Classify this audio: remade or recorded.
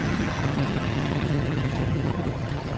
remade